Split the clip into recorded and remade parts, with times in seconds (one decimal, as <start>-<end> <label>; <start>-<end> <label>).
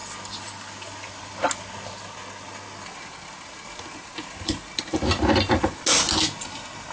0.0-6.9 recorded